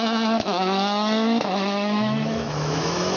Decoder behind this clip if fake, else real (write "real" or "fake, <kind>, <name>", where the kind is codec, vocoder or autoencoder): fake, autoencoder, DAC-VAE